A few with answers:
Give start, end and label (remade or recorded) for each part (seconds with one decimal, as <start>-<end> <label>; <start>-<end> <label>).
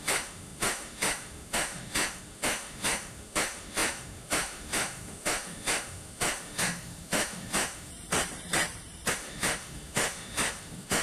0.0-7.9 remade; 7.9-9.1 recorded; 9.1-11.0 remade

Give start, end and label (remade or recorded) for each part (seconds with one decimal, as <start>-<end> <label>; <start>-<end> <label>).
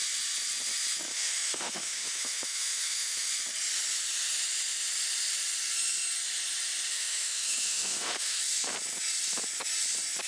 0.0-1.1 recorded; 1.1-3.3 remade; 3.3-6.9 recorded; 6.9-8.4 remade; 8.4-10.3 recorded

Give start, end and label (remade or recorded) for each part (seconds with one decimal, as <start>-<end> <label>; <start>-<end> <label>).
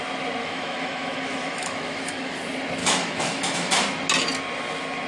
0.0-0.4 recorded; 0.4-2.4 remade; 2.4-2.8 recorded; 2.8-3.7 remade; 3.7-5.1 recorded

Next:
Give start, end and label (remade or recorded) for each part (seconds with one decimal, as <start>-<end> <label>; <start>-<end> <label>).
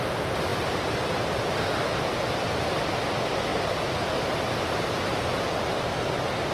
0.0-6.5 recorded